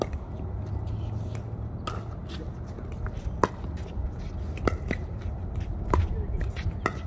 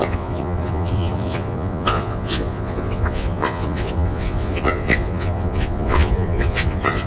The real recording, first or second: first